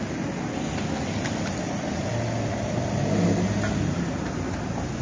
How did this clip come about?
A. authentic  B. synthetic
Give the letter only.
A